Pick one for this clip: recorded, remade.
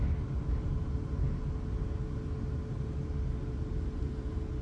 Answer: recorded